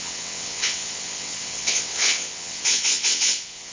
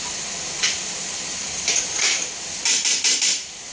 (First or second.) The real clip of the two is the second